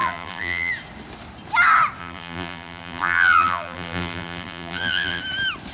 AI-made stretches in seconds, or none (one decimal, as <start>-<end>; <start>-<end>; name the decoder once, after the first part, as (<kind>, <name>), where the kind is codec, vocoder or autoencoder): 0.0-0.7 (vocoder, BigVGAN v2); 2.0-5.2